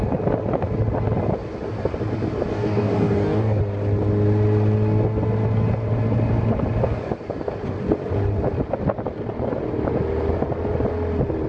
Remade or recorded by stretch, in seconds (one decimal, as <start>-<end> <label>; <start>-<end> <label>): 0.0-2.5 recorded; 2.5-3.6 remade; 3.6-11.5 recorded